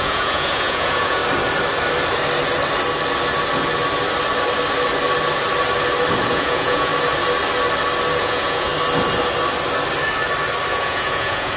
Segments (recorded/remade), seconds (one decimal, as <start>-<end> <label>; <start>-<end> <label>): 0.0-1.2 remade; 1.2-6.3 recorded; 6.3-6.9 remade; 6.9-8.2 recorded; 8.2-8.7 remade; 8.7-10.7 recorded; 10.7-11.6 remade